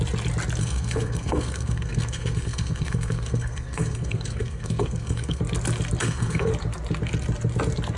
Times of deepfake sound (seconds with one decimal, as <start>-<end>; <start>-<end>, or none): 0.6-5.4; 6.0-6.5